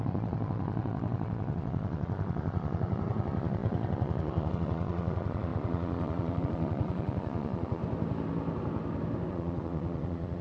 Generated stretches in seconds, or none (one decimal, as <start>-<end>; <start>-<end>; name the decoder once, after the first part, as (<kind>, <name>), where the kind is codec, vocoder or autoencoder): 0.0-7.8 (vocoder, Vocos); 9.3-10.4